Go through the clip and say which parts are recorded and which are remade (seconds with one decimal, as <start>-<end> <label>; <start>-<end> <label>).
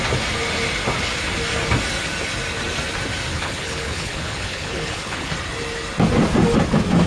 0.0-3.3 recorded; 3.3-5.3 remade; 5.3-7.1 recorded